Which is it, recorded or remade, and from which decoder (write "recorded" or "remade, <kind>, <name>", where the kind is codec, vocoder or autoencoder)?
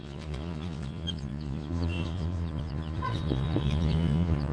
remade, vocoder, Vocos